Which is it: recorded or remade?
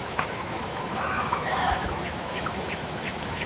remade